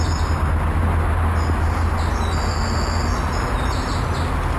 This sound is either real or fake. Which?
real